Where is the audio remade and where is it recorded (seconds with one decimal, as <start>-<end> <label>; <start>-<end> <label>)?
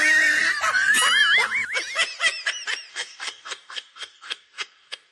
0.0-2.9 recorded; 2.9-5.1 remade